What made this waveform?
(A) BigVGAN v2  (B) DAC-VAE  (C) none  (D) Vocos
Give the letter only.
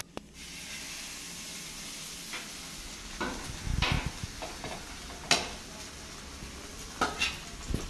C